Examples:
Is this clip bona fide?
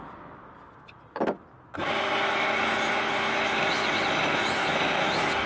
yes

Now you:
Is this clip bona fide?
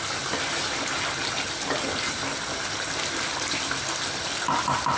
yes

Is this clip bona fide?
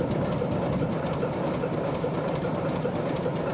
yes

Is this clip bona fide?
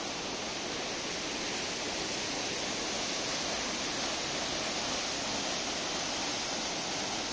yes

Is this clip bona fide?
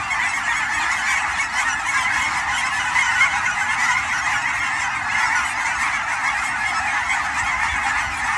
yes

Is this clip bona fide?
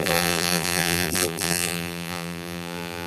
no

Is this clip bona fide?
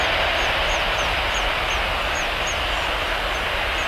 yes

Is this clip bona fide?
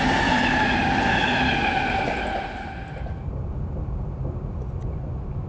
yes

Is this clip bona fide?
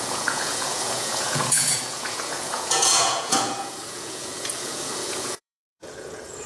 no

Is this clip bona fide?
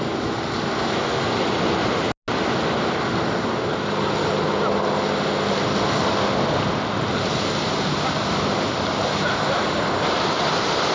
yes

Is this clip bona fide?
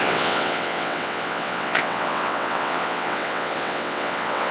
no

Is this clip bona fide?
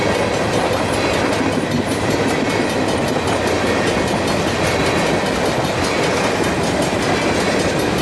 yes